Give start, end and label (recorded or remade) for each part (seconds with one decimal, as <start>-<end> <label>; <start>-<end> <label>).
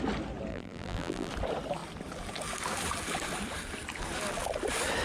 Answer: 0.0-0.5 recorded; 0.5-1.3 remade; 1.3-5.0 recorded